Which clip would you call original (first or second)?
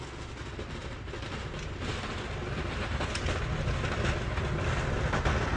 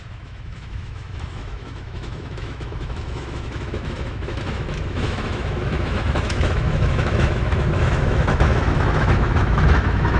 first